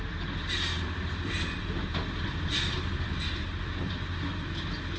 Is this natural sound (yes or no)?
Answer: no